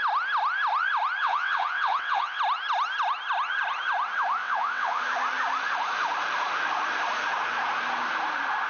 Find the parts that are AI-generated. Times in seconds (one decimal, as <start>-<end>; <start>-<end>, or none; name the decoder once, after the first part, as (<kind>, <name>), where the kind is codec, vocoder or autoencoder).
1.2-2.4 (vocoder, WaveNeXt); 4.4-5.0